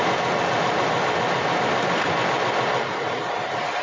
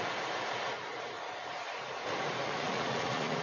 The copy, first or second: second